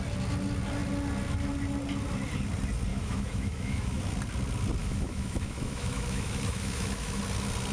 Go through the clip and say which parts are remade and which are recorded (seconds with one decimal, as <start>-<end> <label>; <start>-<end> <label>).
0.0-2.9 recorded; 2.9-4.0 remade; 4.0-4.8 recorded; 4.8-7.2 remade; 7.2-7.7 recorded